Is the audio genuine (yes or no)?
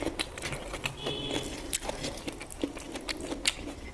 yes